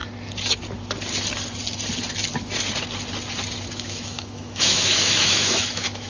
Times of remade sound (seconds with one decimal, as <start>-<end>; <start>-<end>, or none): 3.7-6.1

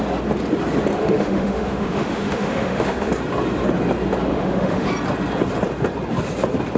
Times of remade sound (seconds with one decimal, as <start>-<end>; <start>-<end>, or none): 1.0-3.1; 4.3-4.9

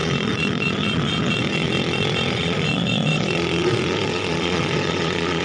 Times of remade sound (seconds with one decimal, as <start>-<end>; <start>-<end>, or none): 0.0-5.4

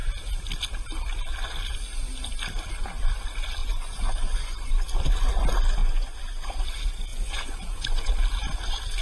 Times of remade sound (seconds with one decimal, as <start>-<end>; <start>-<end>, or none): 3.6-4.7; 5.8-6.6; 7.1-8.1

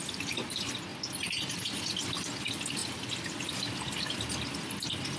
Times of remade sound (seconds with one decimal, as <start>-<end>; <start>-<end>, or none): none

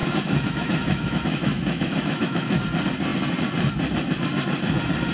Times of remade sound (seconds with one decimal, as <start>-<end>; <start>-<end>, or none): 0.0-2.6